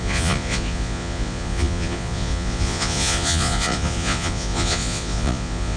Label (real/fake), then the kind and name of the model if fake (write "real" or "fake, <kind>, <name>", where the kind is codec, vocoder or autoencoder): fake, vocoder, Vocos